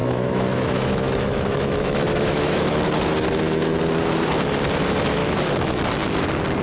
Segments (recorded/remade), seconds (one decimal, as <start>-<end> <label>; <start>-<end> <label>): 0.0-2.6 remade; 2.6-5.2 recorded; 5.2-5.8 remade; 5.8-6.6 recorded